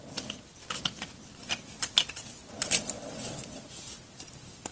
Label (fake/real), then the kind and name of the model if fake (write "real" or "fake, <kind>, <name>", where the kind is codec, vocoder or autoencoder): real